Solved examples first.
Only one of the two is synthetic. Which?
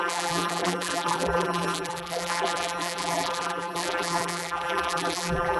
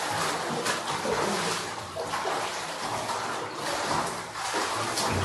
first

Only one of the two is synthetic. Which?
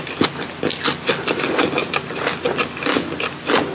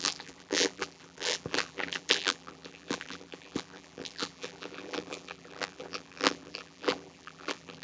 second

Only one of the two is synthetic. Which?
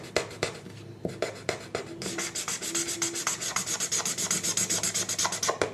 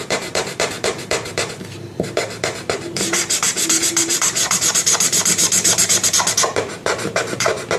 second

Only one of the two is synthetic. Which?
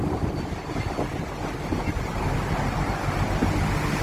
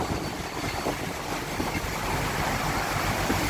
second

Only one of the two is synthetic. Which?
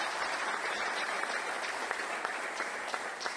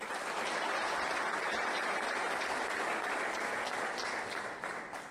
first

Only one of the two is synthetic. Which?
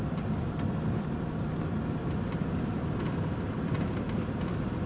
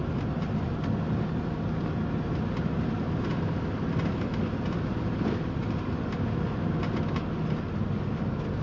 first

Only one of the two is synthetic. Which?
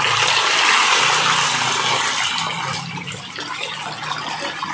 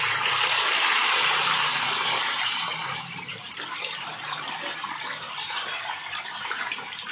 second